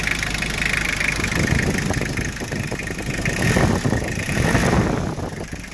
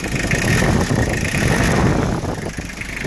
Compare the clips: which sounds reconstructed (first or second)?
first